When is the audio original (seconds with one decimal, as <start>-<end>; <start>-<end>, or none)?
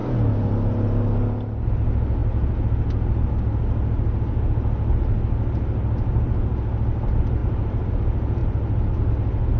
0.0-7.4; 7.9-8.4; 9.1-9.6